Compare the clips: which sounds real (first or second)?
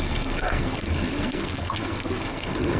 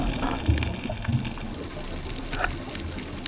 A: second